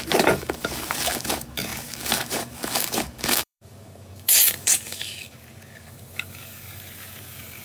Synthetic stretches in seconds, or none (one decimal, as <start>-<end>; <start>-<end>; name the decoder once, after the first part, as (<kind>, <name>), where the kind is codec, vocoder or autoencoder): 0.0-7.6 (codec, DAC)